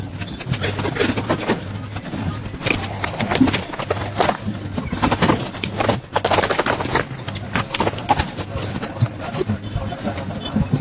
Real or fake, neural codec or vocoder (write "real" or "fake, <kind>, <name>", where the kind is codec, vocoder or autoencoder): real